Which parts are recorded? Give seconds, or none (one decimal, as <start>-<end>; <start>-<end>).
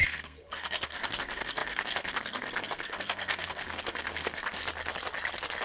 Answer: 4.6-5.6